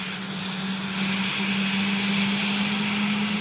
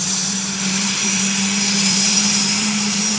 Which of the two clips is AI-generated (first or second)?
second